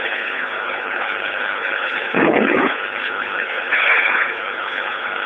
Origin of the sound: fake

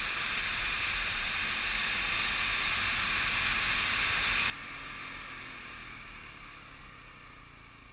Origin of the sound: real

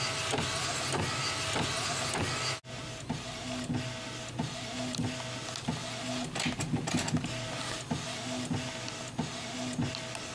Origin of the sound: real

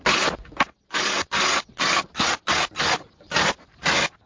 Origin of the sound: real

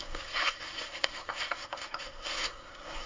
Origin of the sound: fake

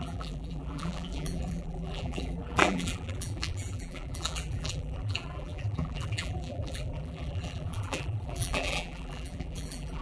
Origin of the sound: fake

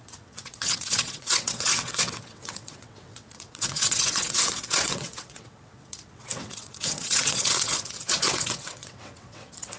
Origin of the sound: fake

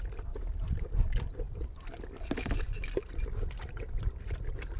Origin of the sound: real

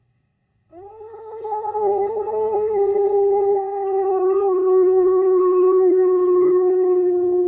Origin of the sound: fake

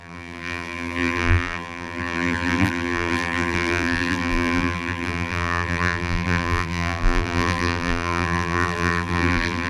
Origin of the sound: fake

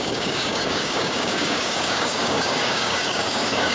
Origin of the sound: fake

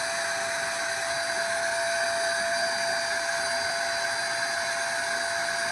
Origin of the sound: real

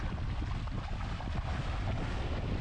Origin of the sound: real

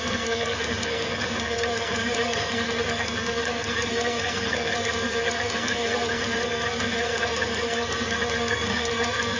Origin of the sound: fake